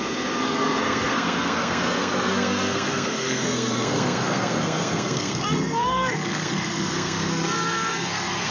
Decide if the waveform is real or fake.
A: fake